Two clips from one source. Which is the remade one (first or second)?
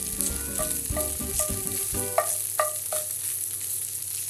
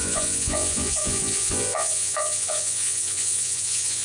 second